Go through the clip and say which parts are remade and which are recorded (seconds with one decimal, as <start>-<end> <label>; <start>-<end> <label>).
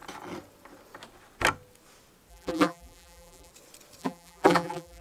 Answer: 0.0-2.3 recorded; 2.3-3.5 remade; 3.5-4.0 recorded; 4.0-5.0 remade